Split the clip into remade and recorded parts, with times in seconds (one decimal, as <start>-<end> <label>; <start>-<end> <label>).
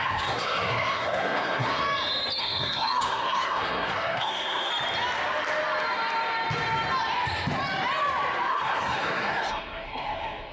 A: 0.0-1.8 remade; 1.8-2.4 recorded; 2.4-4.7 remade; 4.7-8.5 recorded; 8.5-10.5 remade